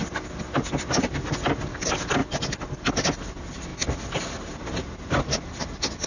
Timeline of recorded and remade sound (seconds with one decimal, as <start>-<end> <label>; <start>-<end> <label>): 0.0-6.1 recorded